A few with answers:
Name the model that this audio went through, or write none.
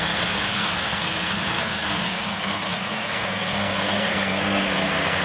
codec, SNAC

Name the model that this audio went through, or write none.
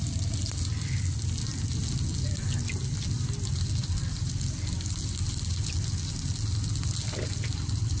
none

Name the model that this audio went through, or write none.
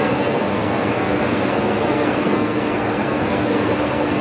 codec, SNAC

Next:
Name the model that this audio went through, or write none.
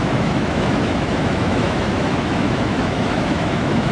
autoencoder, DAC-VAE